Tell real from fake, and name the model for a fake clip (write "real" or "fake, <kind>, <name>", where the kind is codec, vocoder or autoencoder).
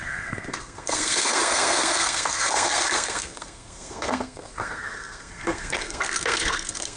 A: fake, codec, SNAC